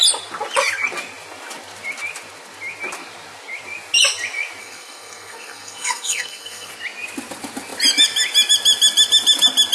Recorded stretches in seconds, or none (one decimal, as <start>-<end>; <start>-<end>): 0.0-4.6; 6.7-9.7